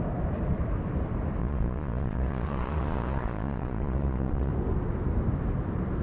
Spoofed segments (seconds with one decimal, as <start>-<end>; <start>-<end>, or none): 1.4-4.5